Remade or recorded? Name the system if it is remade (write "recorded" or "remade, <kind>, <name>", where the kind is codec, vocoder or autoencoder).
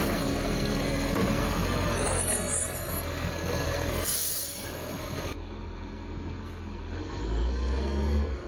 remade, codec, SNAC